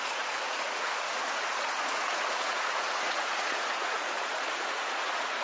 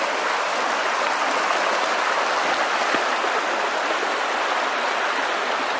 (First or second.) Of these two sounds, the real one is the second